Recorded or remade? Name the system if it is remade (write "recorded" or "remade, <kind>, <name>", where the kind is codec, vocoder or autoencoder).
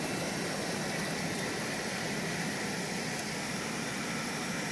recorded